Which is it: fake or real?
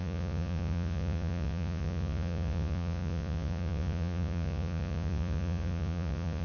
fake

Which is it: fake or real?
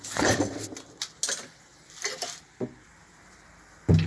real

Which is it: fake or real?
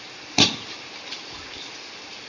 real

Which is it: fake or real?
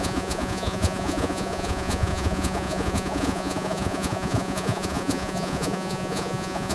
fake